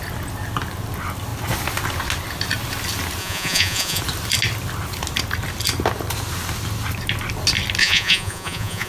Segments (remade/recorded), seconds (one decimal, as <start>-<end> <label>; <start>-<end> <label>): 0.0-3.2 recorded; 3.2-4.0 remade; 4.0-7.8 recorded; 7.8-8.9 remade